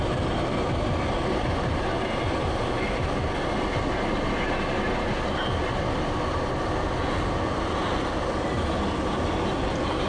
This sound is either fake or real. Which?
real